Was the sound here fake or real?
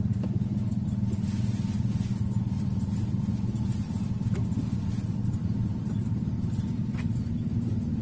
real